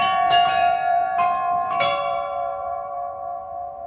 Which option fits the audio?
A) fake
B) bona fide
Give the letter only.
A